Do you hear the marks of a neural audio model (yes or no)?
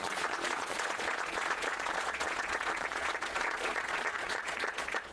yes